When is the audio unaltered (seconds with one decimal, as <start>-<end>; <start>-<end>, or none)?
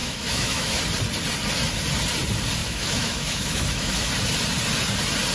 0.8-2.6; 4.1-5.3